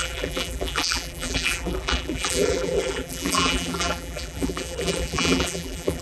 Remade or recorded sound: remade